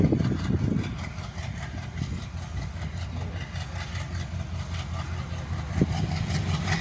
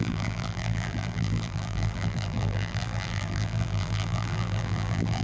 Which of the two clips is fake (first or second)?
second